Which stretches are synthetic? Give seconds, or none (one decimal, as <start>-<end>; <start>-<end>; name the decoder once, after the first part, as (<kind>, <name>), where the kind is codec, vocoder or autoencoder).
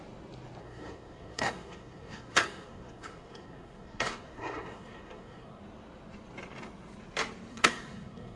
0.6-5.6 (codec, SNAC); 7.5-8.4